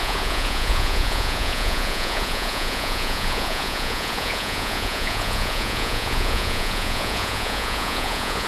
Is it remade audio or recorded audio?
remade